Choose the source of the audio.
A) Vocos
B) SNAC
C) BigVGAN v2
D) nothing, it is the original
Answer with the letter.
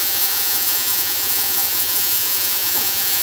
A